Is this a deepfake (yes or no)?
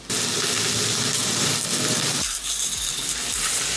no